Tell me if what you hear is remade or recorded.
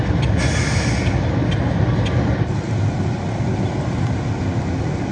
recorded